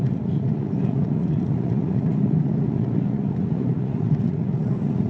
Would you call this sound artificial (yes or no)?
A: yes